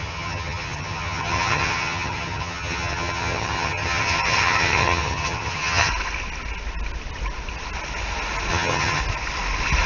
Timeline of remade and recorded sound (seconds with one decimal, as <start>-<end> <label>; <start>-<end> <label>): 0.0-5.9 remade; 5.9-8.5 recorded; 8.5-9.0 remade; 9.0-9.9 recorded